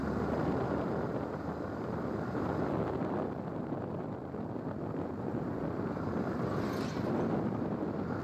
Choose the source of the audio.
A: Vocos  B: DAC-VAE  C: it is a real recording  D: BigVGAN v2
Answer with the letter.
C